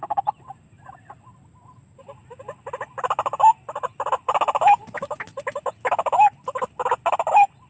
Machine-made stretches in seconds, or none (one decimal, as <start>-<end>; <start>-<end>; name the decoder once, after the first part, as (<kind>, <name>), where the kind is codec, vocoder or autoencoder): none